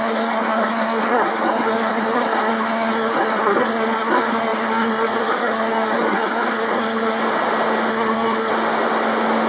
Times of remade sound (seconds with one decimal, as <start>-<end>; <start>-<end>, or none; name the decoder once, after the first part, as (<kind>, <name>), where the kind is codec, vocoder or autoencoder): 0.0-7.2 (codec, SNAC); 7.9-8.5